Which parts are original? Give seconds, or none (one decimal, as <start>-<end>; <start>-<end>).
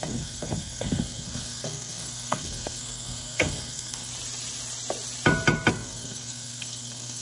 4.1-5.7